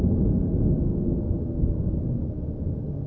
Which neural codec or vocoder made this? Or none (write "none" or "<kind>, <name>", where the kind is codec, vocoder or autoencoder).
none